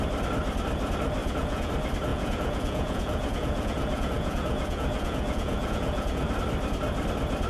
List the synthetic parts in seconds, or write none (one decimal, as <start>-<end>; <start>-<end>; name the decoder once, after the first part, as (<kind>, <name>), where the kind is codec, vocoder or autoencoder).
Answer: 1.2-1.7 (vocoder, Vocos); 2.1-6.3